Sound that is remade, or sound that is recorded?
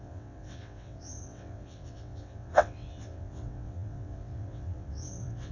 remade